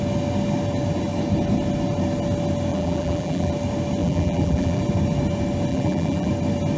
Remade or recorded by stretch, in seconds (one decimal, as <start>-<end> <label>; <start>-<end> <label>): 0.0-2.7 recorded; 2.7-3.5 remade; 3.5-4.0 recorded; 4.0-4.8 remade; 4.8-5.7 recorded; 5.7-6.3 remade; 6.3-6.8 recorded